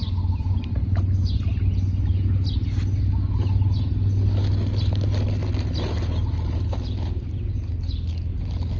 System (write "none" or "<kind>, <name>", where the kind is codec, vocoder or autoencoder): none